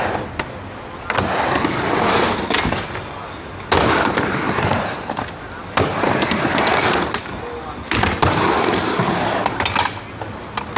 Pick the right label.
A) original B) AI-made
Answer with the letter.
A